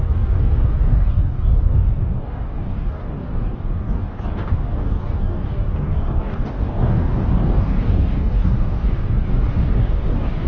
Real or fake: fake